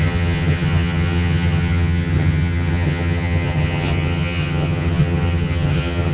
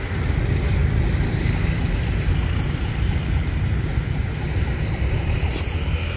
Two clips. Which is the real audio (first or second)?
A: second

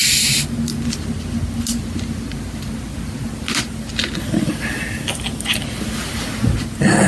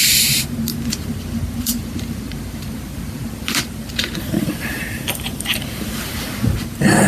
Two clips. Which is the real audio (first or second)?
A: first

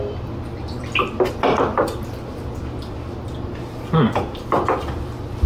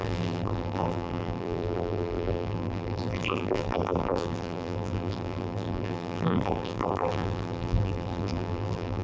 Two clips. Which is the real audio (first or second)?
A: first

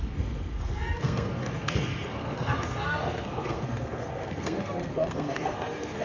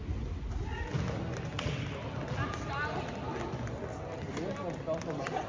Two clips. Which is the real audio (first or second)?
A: second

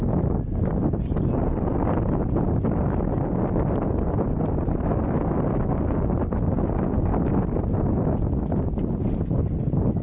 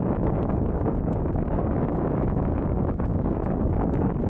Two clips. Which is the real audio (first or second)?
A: first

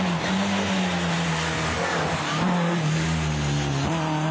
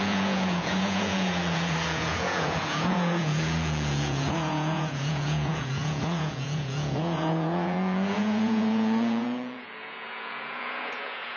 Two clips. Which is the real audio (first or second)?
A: first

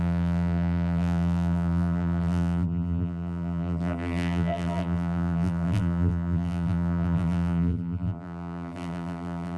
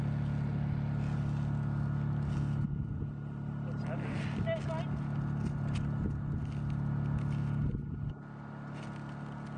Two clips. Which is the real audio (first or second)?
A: second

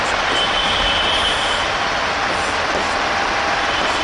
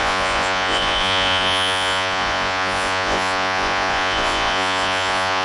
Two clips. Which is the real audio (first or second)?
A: first